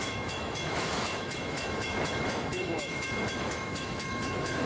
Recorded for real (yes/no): no